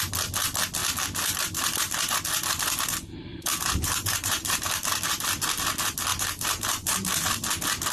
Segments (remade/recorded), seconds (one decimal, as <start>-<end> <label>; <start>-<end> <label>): 0.0-3.3 recorded; 3.3-5.0 remade; 5.0-6.1 recorded; 6.1-7.1 remade; 7.1-7.9 recorded